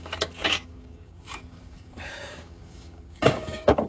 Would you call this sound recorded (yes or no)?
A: no